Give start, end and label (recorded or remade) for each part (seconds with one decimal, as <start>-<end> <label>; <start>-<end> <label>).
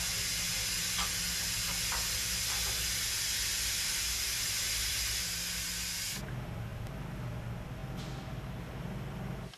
0.0-9.6 recorded